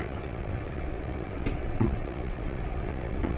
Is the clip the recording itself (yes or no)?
no